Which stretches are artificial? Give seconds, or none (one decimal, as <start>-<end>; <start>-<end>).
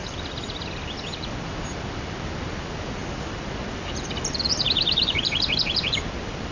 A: none